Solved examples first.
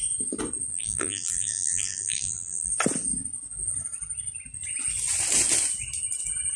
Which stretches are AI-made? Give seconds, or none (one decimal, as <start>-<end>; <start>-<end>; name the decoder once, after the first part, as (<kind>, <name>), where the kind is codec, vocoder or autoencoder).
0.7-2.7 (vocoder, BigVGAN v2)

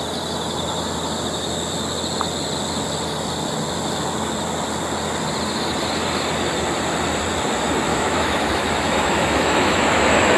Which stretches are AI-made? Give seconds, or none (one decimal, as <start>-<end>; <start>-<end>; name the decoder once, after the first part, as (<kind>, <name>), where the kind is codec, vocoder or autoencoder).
7.9-10.4 (autoencoder, DAC-VAE)

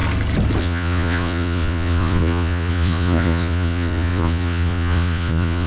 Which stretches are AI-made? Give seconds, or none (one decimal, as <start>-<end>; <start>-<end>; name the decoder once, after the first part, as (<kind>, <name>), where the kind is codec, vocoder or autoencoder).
0.6-5.7 (vocoder, Vocos)

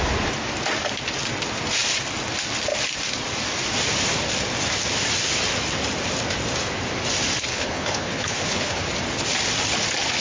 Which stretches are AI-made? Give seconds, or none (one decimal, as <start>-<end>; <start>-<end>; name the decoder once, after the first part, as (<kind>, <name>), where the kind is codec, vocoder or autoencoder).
7.5-8.8 (codec, HILCodec)

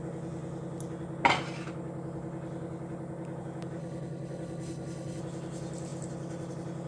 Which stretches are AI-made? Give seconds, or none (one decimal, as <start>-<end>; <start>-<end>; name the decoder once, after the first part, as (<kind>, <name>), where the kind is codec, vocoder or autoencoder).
3.8-5.2 (codec, HILCodec)

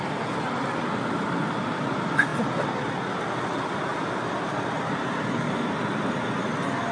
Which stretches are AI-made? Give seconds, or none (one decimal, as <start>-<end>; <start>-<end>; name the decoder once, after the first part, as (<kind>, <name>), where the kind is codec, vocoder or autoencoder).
none